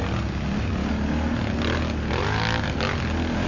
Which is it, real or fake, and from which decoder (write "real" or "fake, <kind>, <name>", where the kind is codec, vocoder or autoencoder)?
real